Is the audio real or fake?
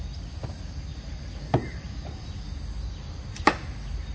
real